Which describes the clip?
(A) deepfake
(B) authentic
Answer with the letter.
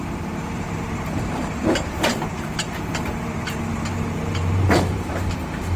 A